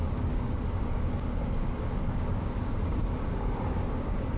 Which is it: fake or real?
fake